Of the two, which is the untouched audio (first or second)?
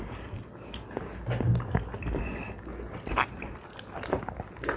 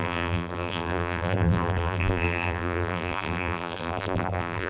first